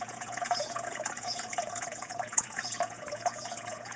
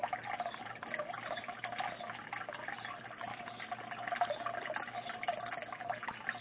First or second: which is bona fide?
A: second